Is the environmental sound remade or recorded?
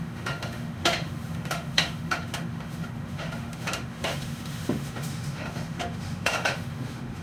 remade